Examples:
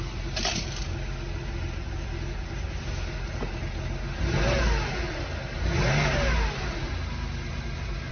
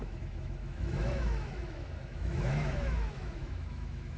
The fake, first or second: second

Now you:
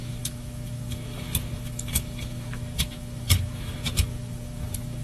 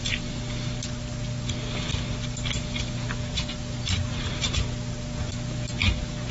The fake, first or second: first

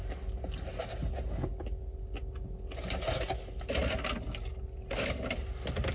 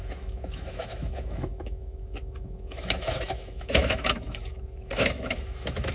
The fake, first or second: second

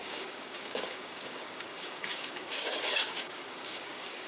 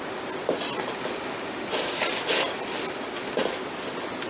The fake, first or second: first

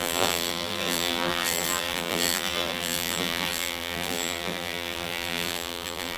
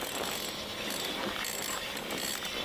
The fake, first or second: first